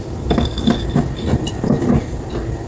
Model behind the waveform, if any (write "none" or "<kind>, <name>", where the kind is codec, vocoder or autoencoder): none